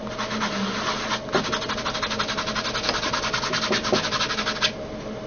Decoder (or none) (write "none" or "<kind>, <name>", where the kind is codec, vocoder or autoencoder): none